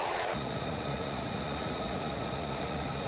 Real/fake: fake